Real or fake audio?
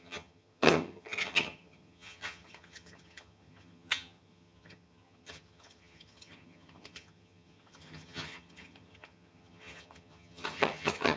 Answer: fake